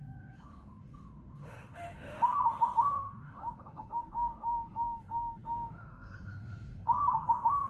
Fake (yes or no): yes